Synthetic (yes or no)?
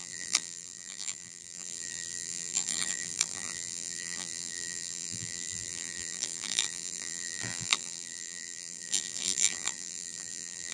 yes